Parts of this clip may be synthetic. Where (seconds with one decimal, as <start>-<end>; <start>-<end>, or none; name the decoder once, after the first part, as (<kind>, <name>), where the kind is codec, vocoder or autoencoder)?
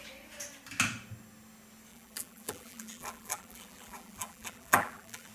1.9-5.3 (vocoder, BigVGAN v2)